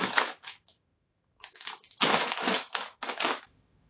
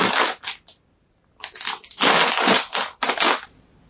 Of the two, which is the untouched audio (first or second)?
second